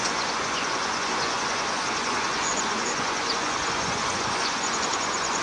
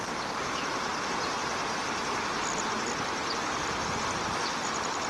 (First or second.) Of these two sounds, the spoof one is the first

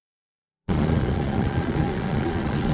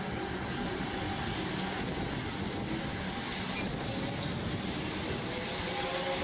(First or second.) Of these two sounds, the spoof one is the first